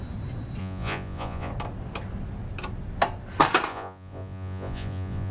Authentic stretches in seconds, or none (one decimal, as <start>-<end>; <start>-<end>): 0.0-0.6; 1.5-3.7